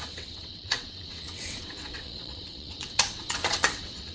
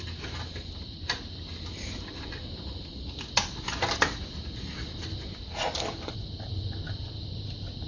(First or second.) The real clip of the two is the second